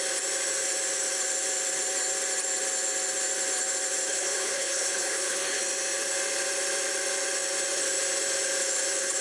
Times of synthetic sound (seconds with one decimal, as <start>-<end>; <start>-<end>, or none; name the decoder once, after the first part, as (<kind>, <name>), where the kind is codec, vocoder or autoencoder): 4.1-5.6 (codec, HILCodec)